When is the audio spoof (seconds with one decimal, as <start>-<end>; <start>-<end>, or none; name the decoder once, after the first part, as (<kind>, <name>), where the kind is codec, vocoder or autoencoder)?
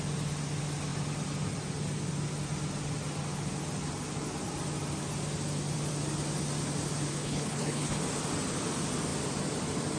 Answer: 7.1-8.0 (codec, HILCodec)